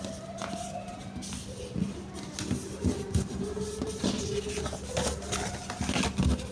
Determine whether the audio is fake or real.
real